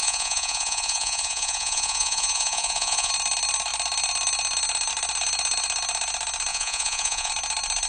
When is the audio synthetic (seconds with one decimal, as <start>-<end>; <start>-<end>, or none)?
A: 0.0-3.1; 6.5-7.3